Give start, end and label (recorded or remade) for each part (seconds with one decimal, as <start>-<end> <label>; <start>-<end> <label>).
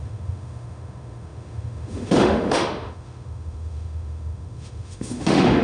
0.0-5.6 remade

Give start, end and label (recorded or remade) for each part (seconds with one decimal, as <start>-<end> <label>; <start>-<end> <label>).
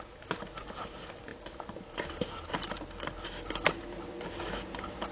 0.0-5.1 recorded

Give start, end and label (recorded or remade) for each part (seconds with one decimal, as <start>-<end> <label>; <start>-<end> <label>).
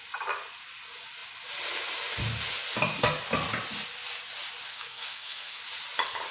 0.0-4.7 recorded; 4.7-5.6 remade; 5.6-6.3 recorded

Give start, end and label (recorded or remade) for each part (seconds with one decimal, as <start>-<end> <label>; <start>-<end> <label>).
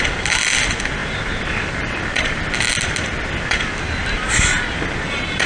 0.0-5.5 recorded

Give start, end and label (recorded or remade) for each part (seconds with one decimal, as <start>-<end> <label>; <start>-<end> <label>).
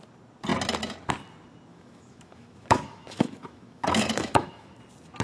0.0-1.7 recorded; 1.7-4.8 remade; 4.8-5.2 recorded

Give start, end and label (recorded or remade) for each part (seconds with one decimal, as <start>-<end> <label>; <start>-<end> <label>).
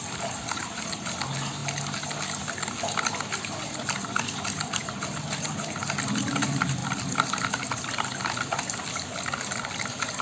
0.0-4.8 recorded; 4.8-5.4 remade; 5.4-10.2 recorded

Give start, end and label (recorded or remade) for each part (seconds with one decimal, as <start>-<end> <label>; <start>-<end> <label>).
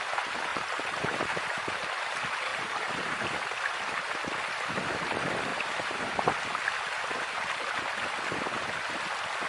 0.0-0.5 recorded; 0.5-1.7 remade; 1.7-2.5 recorded; 2.5-3.2 remade; 3.2-5.5 recorded; 5.5-6.2 remade; 6.2-9.5 recorded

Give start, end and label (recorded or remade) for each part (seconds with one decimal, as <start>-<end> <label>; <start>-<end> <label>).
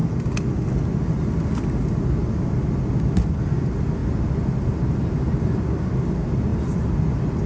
0.0-7.5 recorded